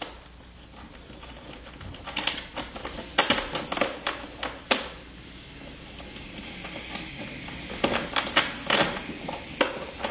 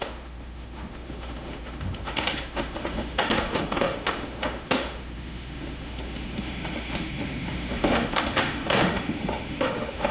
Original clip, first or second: first